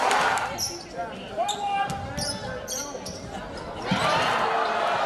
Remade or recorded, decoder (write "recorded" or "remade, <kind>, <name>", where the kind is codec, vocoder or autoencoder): recorded